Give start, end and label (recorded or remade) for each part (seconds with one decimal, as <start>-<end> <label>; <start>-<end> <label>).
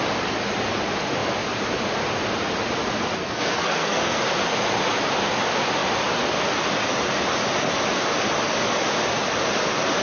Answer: 0.0-3.2 recorded; 3.2-4.2 remade; 4.2-10.0 recorded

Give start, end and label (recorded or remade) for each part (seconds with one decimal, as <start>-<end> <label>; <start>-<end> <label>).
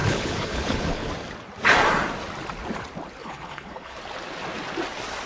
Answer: 0.0-1.1 remade; 1.1-3.2 recorded; 3.2-4.0 remade; 4.0-5.3 recorded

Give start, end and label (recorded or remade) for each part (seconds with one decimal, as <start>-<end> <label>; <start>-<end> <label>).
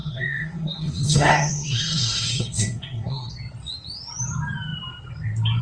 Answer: 0.0-3.3 remade; 3.3-5.6 recorded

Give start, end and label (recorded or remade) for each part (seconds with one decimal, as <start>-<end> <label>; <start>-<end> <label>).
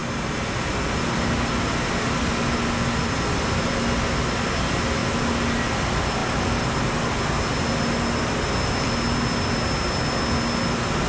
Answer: 0.0-11.1 recorded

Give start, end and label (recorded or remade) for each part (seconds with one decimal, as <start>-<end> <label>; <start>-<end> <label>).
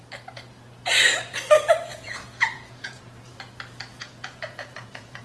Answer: 0.0-1.9 recorded; 1.9-3.0 remade; 3.0-3.9 recorded; 3.9-5.2 remade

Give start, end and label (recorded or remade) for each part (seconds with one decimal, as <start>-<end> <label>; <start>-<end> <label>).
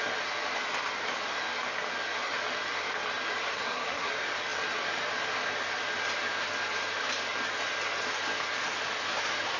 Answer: 0.0-3.5 recorded; 3.5-4.1 remade; 4.1-9.6 recorded